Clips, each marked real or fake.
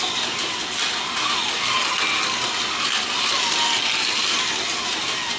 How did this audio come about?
real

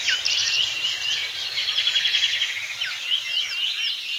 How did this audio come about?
real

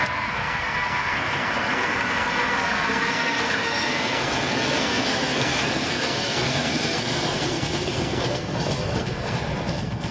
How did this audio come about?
fake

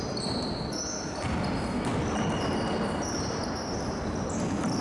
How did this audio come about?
real